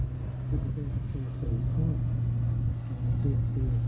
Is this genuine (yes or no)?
yes